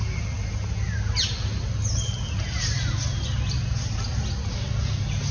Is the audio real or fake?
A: real